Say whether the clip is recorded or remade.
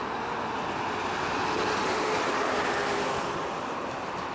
recorded